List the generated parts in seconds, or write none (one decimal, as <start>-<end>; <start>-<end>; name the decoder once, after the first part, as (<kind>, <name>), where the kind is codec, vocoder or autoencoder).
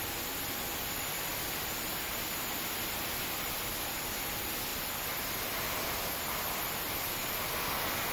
none